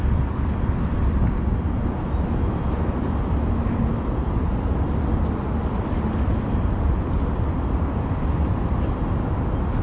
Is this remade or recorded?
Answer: recorded